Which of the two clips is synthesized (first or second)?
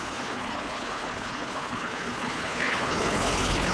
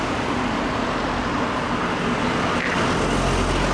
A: first